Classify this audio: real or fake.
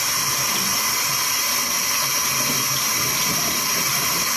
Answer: real